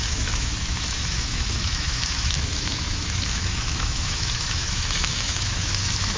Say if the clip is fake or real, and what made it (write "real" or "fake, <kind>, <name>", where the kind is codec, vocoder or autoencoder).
fake, autoencoder, DAC-VAE